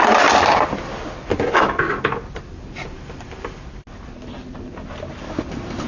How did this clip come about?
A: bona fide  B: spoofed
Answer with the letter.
A